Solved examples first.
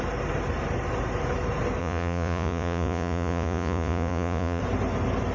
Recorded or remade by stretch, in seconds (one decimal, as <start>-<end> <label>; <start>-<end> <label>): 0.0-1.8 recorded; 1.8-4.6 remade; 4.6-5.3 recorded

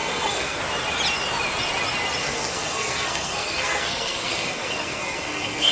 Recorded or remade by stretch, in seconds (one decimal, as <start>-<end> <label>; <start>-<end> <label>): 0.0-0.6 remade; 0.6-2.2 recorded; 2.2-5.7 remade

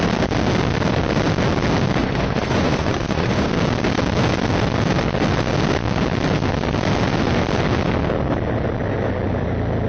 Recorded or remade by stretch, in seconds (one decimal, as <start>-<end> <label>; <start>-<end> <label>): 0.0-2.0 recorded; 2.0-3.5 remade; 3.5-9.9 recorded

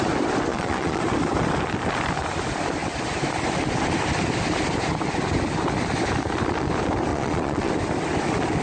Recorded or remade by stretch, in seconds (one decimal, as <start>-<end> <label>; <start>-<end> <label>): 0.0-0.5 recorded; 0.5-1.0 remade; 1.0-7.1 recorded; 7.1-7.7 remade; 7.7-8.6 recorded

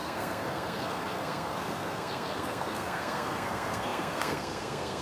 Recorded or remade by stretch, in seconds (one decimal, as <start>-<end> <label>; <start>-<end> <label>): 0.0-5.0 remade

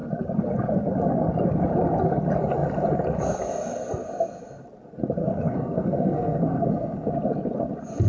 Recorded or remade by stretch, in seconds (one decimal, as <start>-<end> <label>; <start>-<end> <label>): 0.0-5.2 recorded; 5.2-7.1 remade; 7.1-8.1 recorded

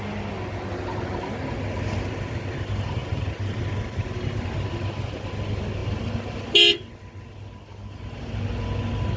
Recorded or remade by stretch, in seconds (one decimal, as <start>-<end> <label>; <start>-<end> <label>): 0.0-9.2 recorded